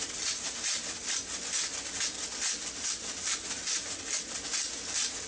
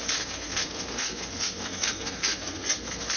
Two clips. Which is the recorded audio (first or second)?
first